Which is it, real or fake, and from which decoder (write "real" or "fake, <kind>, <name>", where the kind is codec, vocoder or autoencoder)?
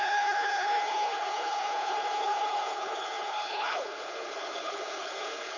fake, codec, HILCodec